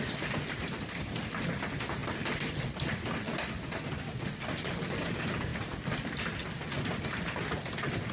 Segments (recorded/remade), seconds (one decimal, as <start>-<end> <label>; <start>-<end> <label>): 0.0-8.1 recorded